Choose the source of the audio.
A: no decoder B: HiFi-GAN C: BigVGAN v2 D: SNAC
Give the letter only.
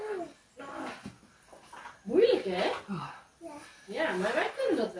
A